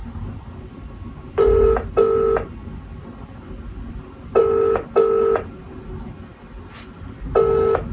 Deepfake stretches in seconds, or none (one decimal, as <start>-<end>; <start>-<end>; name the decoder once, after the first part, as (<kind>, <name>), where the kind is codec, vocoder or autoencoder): none